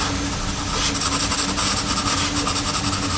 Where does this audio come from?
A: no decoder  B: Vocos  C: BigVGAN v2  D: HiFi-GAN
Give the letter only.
A